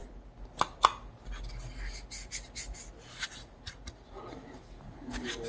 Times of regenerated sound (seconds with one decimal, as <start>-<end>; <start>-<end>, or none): none